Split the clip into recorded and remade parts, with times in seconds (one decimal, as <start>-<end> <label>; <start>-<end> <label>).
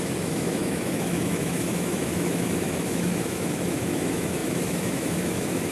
0.0-5.7 remade